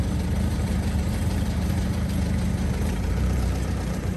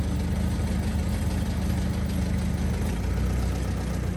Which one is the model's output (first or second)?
first